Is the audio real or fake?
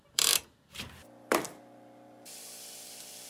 fake